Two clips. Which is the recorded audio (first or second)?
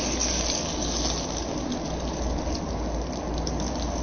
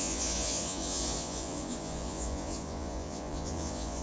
first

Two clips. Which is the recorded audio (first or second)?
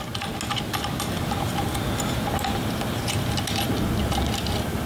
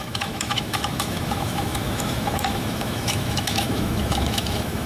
first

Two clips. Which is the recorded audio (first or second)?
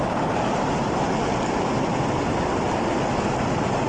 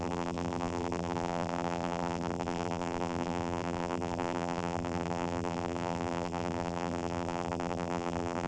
first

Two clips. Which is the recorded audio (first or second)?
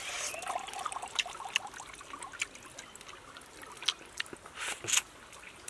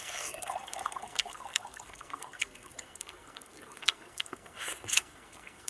first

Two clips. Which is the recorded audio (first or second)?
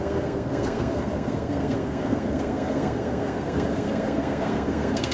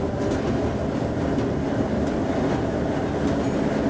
second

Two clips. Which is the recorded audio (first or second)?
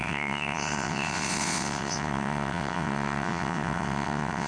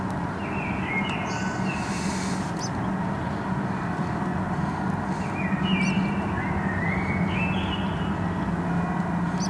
second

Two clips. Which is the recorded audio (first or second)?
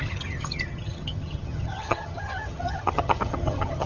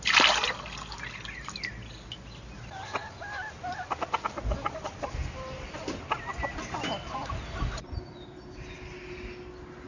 second